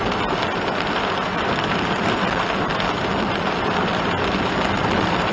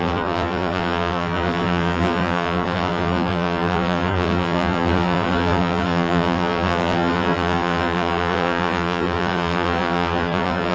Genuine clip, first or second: first